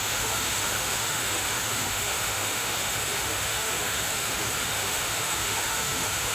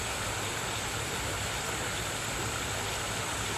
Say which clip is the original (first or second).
second